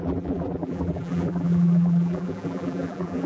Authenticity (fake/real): fake